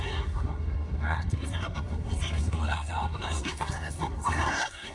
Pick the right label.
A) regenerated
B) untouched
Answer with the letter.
A